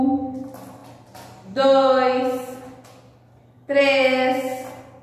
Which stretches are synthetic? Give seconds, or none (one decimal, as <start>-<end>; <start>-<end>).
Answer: none

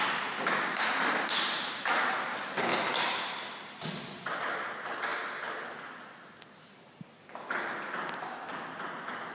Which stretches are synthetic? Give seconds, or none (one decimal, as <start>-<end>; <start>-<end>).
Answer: none